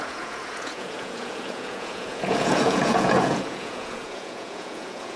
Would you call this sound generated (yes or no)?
yes